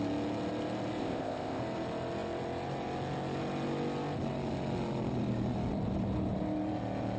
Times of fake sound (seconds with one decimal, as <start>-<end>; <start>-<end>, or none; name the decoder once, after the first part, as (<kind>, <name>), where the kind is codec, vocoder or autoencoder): 1.0-1.6 (codec, ZipCodec)